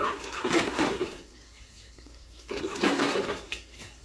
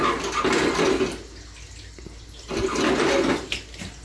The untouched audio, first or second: second